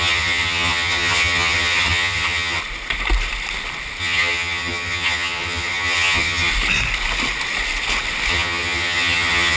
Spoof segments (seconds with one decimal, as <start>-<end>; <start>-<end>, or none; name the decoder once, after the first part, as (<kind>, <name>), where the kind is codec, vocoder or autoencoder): 0.0-2.6 (vocoder, HiFi-GAN); 4.0-6.5; 8.3-9.6